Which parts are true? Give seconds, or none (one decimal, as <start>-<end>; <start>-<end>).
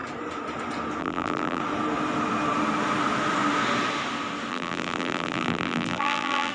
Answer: 0.0-1.0; 1.6-4.5